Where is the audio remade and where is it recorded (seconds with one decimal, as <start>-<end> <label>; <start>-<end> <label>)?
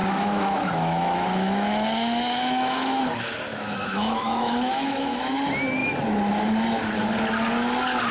0.0-3.0 remade; 3.0-3.5 recorded; 3.5-5.2 remade; 5.2-8.1 recorded